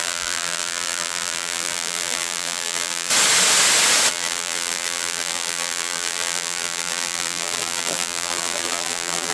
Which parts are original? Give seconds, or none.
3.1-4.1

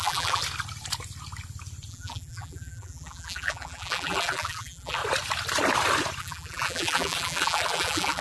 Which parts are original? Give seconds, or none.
0.4-1.9; 5.0-6.2

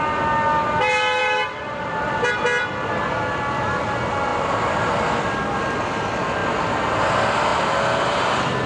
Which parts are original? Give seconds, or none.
0.0-1.2; 2.1-4.3; 4.9-8.7

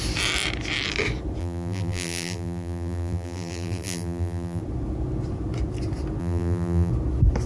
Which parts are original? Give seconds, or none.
0.0-1.4; 4.6-6.2; 6.9-7.5

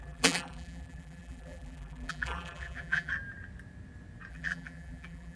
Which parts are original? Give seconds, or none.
3.1-4.3

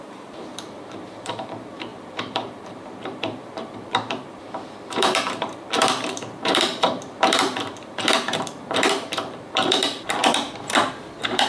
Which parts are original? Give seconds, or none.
10.2-11.0